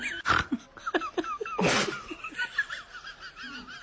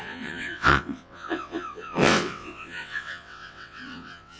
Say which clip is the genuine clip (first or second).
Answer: first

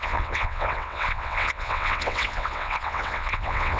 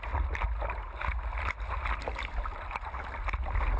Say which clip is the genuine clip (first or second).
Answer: second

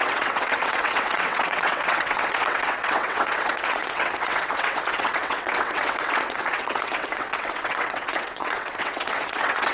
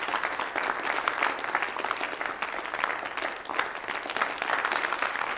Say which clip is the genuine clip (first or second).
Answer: second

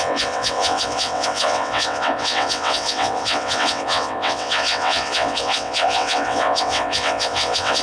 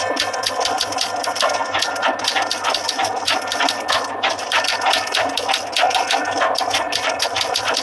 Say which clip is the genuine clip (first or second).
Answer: second